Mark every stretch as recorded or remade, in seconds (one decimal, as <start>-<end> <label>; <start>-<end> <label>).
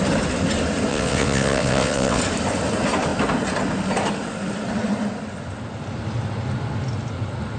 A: 0.0-0.9 recorded; 0.9-2.2 remade; 2.2-7.6 recorded